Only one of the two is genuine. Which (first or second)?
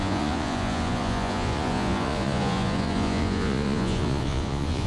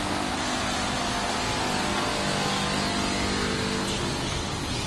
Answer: second